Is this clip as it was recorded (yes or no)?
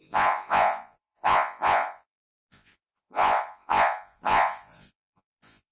no